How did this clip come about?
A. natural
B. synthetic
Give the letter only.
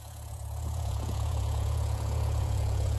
B